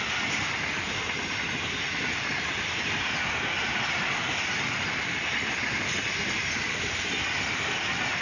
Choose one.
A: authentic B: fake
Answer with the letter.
A